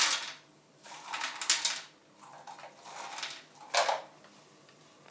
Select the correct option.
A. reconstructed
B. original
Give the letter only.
B